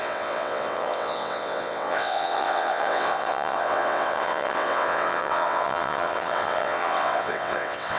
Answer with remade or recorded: remade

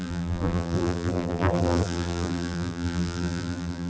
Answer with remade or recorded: remade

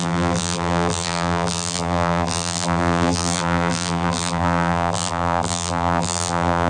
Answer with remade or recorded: remade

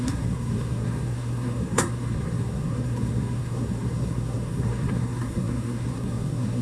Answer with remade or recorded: remade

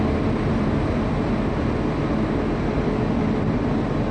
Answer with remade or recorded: recorded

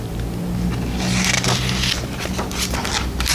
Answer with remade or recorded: recorded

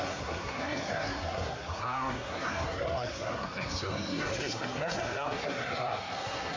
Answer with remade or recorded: remade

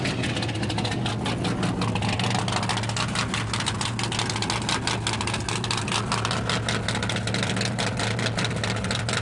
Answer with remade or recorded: recorded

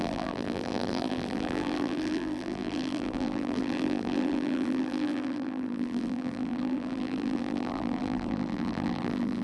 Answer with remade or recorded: remade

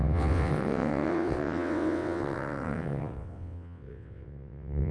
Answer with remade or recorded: remade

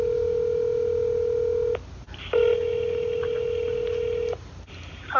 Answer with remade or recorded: recorded